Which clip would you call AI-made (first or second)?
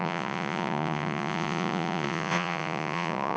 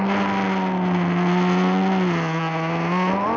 first